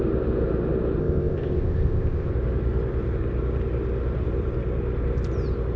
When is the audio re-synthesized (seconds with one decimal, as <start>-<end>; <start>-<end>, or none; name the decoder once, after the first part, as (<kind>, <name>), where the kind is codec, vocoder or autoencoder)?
1.0-2.3 (codec, ZipCodec)